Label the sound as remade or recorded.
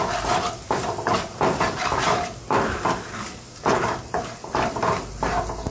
recorded